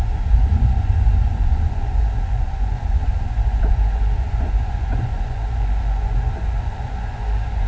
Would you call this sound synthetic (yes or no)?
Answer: yes